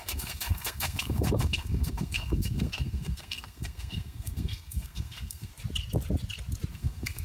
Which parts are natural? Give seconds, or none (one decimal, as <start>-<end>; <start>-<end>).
5.5-6.7